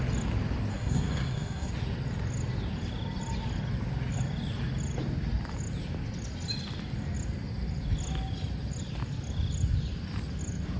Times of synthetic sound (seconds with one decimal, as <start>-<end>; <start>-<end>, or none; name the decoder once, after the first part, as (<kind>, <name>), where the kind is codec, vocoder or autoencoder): 0.7-1.7 (codec, SNAC)